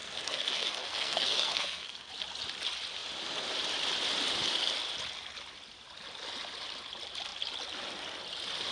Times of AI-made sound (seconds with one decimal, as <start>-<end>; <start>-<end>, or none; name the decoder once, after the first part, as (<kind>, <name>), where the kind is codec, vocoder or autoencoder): 0.0-2.1 (codec, SNAC)